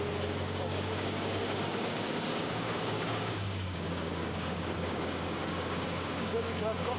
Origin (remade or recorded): remade